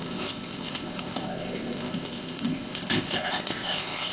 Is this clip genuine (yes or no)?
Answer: no